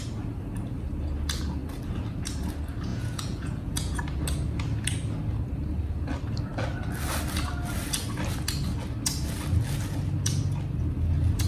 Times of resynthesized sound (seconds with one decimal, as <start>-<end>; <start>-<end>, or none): 2.9-4.0